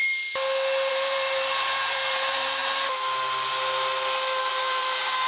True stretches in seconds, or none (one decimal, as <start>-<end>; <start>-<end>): 0.0-0.9; 2.6-4.5